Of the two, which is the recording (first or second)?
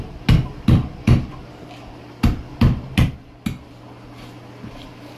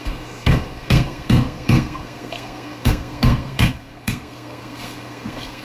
first